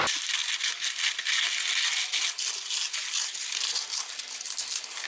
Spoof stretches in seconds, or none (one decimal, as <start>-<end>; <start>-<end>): none